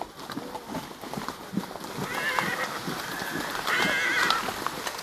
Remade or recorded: recorded